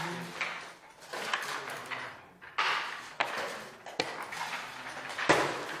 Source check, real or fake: real